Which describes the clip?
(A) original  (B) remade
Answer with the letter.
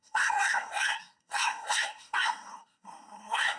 B